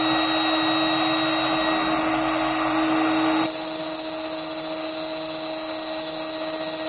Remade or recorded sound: recorded